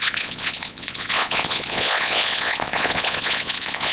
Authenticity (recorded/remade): remade